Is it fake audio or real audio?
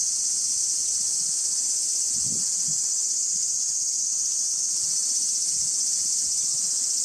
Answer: real